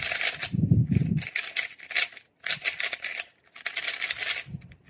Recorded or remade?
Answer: recorded